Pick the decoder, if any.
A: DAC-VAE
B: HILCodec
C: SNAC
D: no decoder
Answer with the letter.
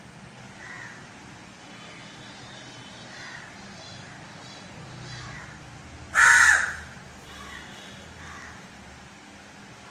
D